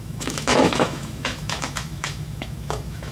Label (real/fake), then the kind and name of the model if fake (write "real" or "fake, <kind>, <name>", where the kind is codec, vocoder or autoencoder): fake, autoencoder, DAC-VAE